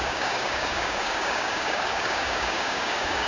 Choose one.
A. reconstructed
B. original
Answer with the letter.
A